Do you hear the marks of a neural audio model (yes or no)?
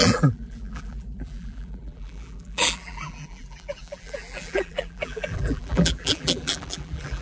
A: yes